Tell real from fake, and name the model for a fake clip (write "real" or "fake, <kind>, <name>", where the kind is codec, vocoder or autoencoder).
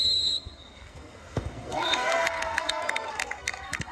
fake, codec, SNAC